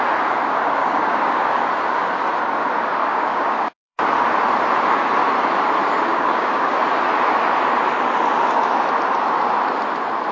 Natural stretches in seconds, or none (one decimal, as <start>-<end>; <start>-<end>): 0.0-0.8; 1.6-3.0; 4.0-6.1; 6.8-10.3